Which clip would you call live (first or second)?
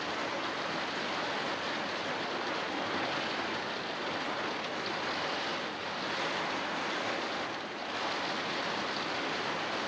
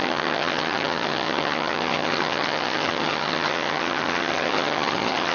first